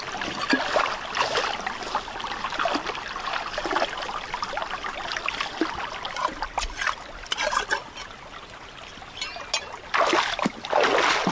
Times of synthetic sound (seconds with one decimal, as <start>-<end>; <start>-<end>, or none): none